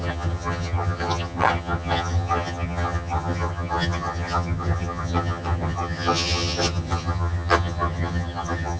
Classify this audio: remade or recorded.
remade